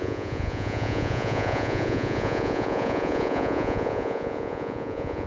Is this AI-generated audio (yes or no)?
yes